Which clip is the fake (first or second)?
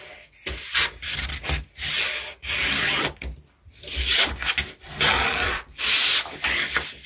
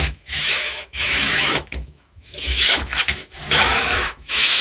second